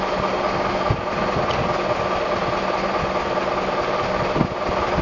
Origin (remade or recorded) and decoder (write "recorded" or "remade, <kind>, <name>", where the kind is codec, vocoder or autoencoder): recorded